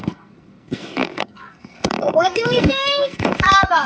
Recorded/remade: remade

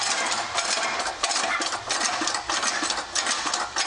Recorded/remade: recorded